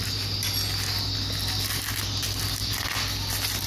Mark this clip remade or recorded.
recorded